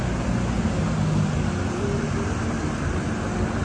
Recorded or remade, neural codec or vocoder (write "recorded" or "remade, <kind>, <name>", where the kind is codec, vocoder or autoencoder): recorded